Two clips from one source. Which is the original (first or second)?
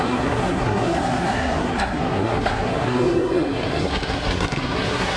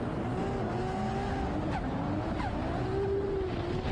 second